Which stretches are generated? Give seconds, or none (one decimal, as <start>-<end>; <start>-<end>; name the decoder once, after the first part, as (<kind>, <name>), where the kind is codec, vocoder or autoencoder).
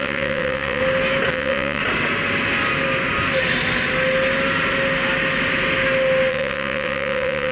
0.0-0.8 (vocoder, WaveNeXt); 1.3-1.8; 6.3-7.5